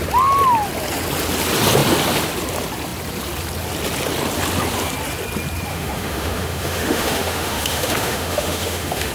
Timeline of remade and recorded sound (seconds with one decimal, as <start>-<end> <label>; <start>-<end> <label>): 0.0-5.7 recorded; 5.7-9.1 remade